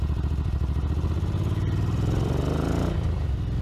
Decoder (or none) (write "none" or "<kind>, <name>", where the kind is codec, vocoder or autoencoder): vocoder, BigVGAN v2